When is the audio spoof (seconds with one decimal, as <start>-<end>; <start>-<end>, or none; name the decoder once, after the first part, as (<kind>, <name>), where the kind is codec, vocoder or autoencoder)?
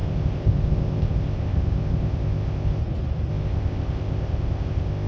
0.0-2.8 (codec, ZipCodec); 3.3-5.1